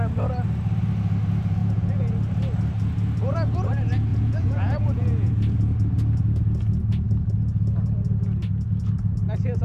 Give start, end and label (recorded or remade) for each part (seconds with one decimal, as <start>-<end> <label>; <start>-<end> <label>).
0.0-1.6 recorded; 1.6-2.1 remade; 2.1-4.1 recorded; 4.1-5.3 remade; 5.3-9.6 recorded